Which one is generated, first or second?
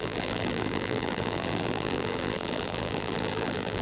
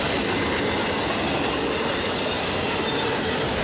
first